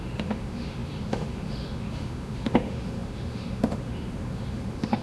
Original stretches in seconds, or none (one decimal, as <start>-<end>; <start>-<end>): none